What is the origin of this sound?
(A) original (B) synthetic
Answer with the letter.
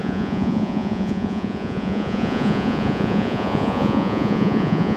B